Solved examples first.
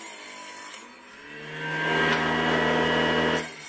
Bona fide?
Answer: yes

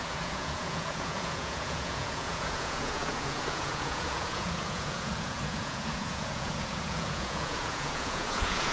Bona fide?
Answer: no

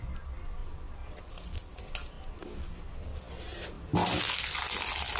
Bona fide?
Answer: yes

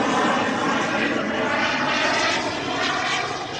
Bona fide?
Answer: yes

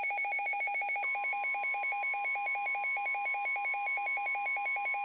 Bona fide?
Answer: yes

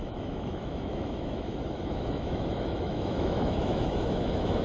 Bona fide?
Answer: no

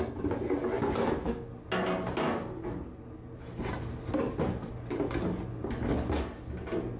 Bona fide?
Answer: yes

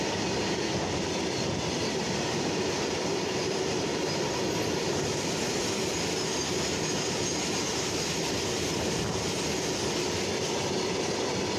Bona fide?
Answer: yes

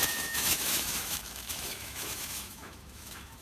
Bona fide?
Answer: no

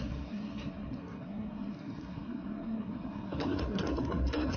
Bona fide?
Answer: no